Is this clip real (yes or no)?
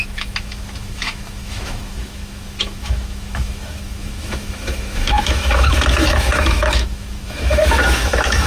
no